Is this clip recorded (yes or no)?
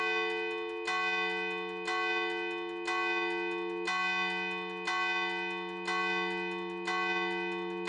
yes